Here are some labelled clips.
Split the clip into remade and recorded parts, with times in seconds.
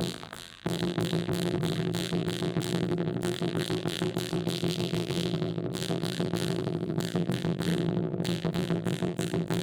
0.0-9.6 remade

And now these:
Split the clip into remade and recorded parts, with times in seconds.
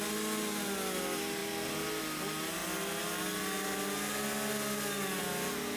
0.0-5.8 recorded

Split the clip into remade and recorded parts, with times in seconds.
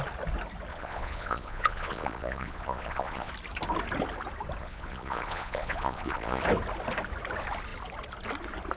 0.0-0.7 recorded; 0.7-3.3 remade; 3.3-4.6 recorded; 4.6-6.4 remade; 6.4-8.8 recorded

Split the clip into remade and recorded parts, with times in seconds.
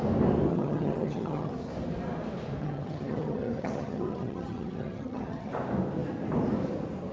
0.0-0.5 recorded; 0.5-1.5 remade; 1.5-2.6 recorded; 2.6-5.5 remade; 5.5-7.1 recorded